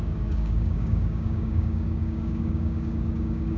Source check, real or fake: fake